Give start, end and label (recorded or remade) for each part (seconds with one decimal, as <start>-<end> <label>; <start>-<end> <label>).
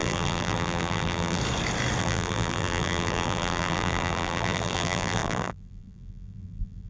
0.0-1.4 remade; 1.4-2.0 recorded; 2.0-6.9 remade